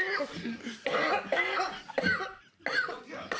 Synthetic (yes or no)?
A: no